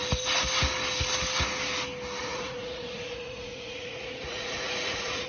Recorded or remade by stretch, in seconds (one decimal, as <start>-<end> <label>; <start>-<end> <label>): 0.0-2.2 recorded; 2.2-5.3 remade